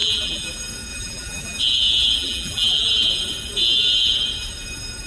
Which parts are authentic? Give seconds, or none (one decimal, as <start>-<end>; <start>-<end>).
0.5-0.9; 1.6-2.2; 2.9-5.1